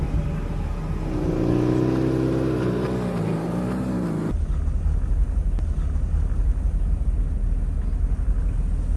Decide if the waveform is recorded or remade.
recorded